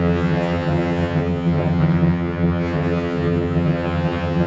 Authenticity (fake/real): fake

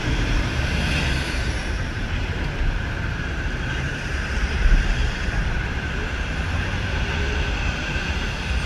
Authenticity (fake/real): fake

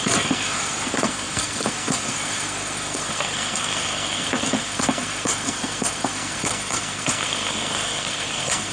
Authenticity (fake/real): fake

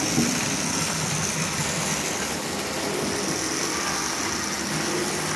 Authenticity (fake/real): real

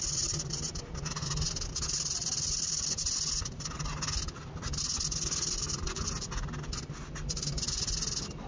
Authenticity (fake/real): real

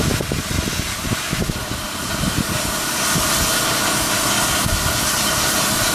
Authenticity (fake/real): real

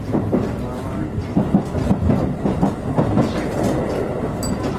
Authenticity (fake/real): real